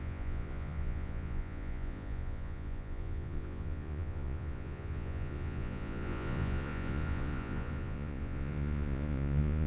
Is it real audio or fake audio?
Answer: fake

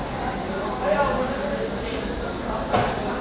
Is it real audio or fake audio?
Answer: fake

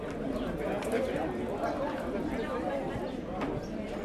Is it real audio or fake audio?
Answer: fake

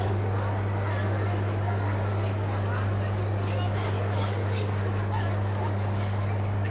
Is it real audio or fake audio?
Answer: fake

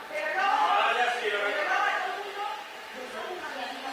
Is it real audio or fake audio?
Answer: fake